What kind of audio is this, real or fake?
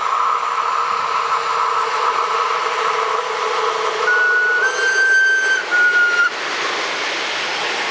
real